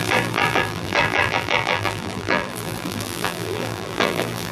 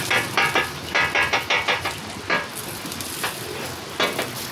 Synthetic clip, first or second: first